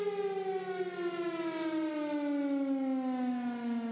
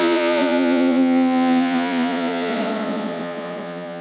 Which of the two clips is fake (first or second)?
second